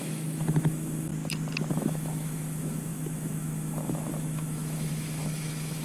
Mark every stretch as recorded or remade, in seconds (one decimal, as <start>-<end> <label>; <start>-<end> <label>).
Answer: 0.0-1.1 remade; 1.1-1.7 recorded; 1.7-5.8 remade